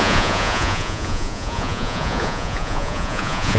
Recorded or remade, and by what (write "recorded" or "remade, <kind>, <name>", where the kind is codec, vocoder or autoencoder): remade, vocoder, Vocos